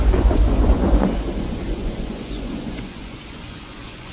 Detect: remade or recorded remade